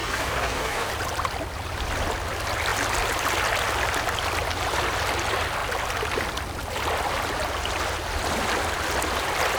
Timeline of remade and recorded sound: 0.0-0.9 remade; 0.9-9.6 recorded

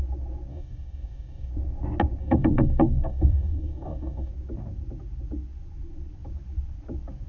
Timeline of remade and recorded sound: 0.0-0.5 recorded; 0.5-1.5 remade; 1.5-2.2 recorded; 2.2-4.3 remade; 4.3-7.3 recorded

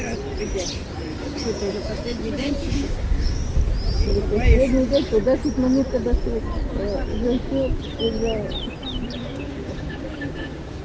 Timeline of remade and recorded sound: 0.0-1.1 recorded; 1.1-3.6 remade; 3.6-7.1 recorded; 7.1-7.8 remade; 7.8-9.2 recorded; 9.2-10.8 remade

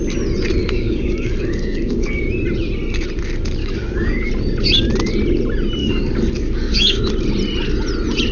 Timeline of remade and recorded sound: 0.0-0.6 recorded; 0.6-2.2 remade; 2.2-3.6 recorded; 3.6-4.3 remade; 4.3-5.8 recorded; 5.8-7.1 remade; 7.1-8.3 recorded

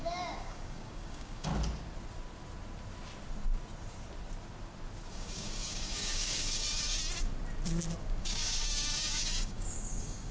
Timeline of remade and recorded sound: 0.0-1.5 remade; 1.5-5.1 recorded; 5.1-7.0 remade; 7.0-8.2 recorded; 8.2-10.3 remade

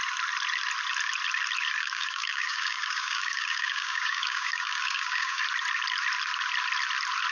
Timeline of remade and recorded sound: 0.0-1.8 recorded; 1.8-5.4 remade; 5.4-7.3 recorded